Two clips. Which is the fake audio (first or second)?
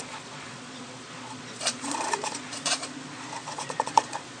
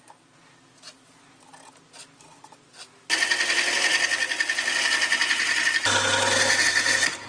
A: first